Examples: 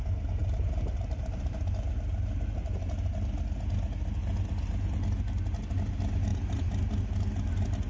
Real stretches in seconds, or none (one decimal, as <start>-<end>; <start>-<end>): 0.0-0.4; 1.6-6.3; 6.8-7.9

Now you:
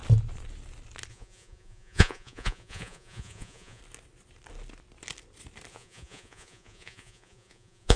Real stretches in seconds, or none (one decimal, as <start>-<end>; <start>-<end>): 0.0-1.1; 3.8-5.7

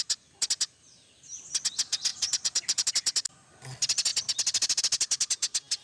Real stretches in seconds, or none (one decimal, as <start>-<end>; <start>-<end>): 0.0-2.1; 2.9-5.8

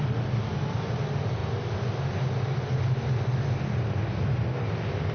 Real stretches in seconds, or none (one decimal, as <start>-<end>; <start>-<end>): 0.0-5.1

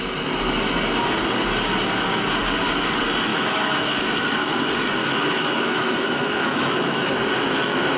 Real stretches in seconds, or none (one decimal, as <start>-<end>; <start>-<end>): 0.0-3.3; 4.0-5.0; 7.1-8.0